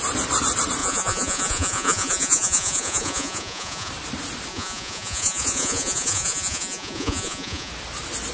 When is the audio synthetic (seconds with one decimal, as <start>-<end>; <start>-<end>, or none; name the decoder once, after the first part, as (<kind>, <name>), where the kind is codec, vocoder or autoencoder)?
0.8-3.9 (vocoder, Vocos); 4.5-7.7